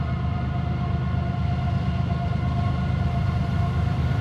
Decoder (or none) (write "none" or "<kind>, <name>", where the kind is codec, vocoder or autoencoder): none